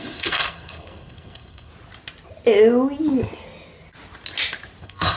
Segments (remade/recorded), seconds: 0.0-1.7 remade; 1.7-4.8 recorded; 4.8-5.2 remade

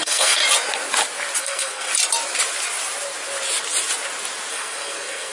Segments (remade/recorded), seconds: 0.0-0.4 remade; 0.4-1.4 recorded; 1.4-1.9 remade; 1.9-4.5 recorded; 4.5-5.3 remade

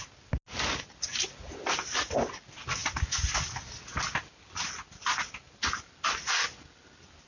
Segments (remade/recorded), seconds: 0.0-7.3 recorded